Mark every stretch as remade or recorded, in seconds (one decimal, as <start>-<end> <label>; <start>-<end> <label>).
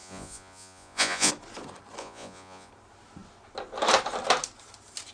0.0-1.3 remade; 1.3-2.0 recorded; 2.0-2.7 remade; 2.7-5.1 recorded